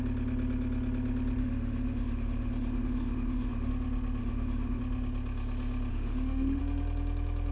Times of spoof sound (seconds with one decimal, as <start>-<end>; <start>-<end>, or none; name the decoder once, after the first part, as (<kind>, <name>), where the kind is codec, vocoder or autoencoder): 1.4-3.7 (autoencoder, DAC-VAE); 4.2-4.8; 5.9-6.6